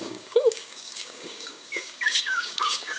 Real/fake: fake